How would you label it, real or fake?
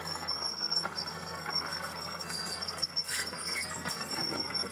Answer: fake